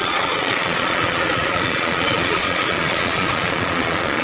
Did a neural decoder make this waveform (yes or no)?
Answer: yes